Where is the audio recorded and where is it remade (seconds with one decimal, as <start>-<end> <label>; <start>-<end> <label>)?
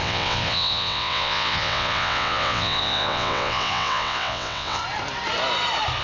0.0-4.8 remade; 4.8-6.0 recorded